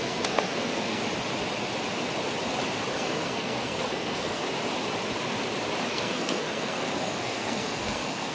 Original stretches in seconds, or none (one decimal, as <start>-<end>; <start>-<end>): 1.0-2.9; 4.4-5.9